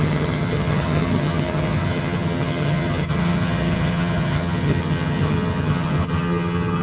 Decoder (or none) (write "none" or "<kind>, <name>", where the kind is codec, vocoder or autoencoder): vocoder, HiFi-GAN